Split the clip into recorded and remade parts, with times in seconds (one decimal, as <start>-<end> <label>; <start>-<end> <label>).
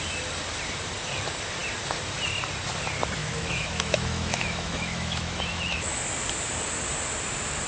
0.0-3.2 recorded; 3.2-6.0 remade; 6.0-7.7 recorded